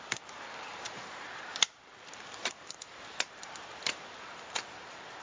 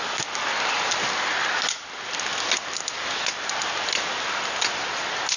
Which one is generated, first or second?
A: first